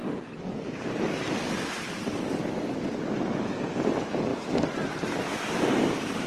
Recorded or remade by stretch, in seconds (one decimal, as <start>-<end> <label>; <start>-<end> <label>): 0.0-1.3 recorded; 1.3-4.3 remade; 4.3-5.2 recorded; 5.2-6.3 remade